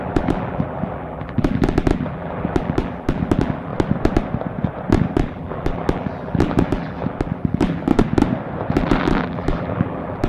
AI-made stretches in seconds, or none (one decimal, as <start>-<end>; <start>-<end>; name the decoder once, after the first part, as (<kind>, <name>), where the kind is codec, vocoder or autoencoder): 0.0-3.7 (vocoder, BigVGAN v2); 5.1-7.9; 8.7-10.3